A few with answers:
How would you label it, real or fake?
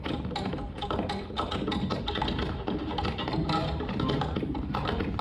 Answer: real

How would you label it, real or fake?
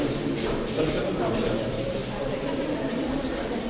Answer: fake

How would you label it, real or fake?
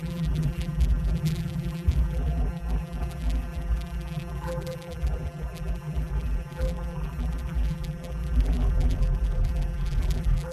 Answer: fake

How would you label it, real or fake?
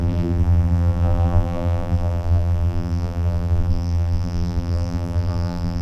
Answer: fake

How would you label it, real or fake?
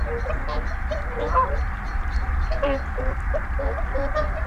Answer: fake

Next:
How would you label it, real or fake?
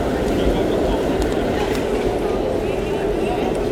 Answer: real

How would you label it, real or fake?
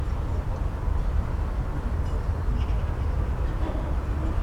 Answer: real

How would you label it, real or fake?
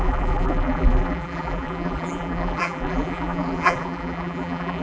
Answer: fake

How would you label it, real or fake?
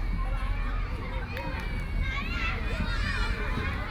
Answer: real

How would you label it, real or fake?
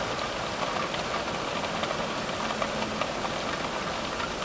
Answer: real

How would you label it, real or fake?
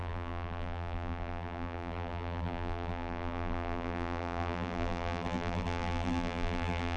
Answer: fake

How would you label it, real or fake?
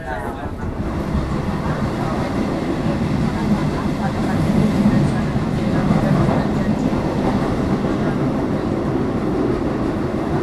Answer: real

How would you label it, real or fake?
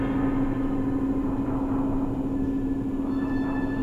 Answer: real